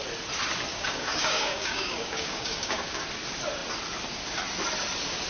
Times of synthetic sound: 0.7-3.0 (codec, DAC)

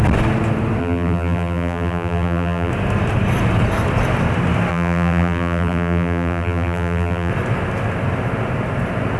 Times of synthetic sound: 0.8-2.7 (vocoder, BigVGAN v2); 4.7-7.3

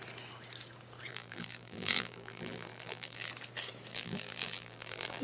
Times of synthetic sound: 1.1-3.3 (vocoder, BigVGAN v2); 3.9-5.2

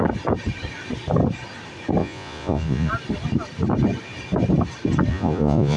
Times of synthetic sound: 2.0-2.9 (vocoder, Vocos); 5.1-5.8

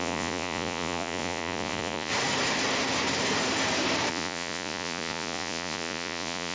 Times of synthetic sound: 0.0-2.1 (vocoder, Vocos); 4.1-6.5

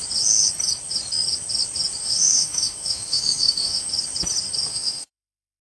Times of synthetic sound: 2.0-3.9 (autoencoder, DAC-VAE); 4.7-5.6

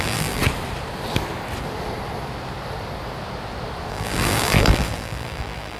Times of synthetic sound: 0.0-0.4 (vocoder, BigVGAN v2); 3.9-5.8

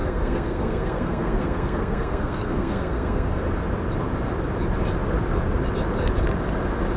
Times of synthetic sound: 0.0-3.4 (codec, SNAC)